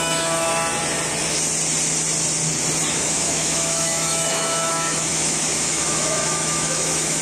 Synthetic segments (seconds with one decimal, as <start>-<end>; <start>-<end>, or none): 0.0-0.5; 2.9-7.2

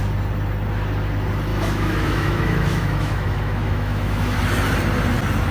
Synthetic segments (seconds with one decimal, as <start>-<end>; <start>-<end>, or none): 1.5-4.4

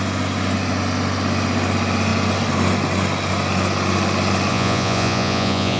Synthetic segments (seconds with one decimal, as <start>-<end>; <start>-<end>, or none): 4.5-5.8

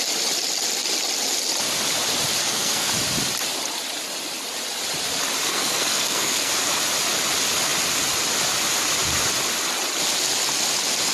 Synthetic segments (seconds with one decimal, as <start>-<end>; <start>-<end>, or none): 2.4-2.9; 5.5-6.5

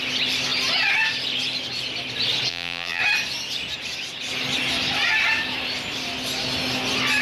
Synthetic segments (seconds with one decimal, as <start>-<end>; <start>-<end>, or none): 2.5-3.0

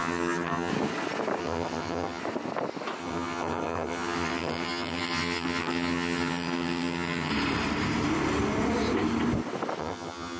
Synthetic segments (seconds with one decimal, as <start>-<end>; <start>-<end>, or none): 0.0-0.7; 1.4-2.2; 3.0-7.3; 9.8-10.4

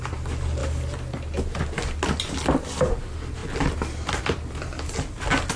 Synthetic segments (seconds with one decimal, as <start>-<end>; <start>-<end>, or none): none

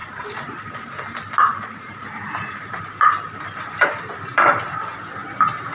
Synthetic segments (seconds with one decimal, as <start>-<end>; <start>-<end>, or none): 0.0-0.7; 1.5-4.9